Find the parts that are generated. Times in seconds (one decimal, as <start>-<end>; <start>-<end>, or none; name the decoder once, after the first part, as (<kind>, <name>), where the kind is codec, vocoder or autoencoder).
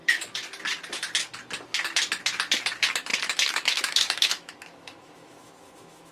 3.1-6.1 (autoencoder, DAC-VAE)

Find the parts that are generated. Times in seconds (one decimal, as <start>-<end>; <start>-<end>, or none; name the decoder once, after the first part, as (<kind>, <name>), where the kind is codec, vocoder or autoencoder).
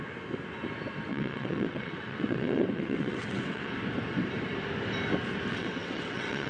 1.1-3.7 (vocoder, WaveNeXt); 5.5-6.5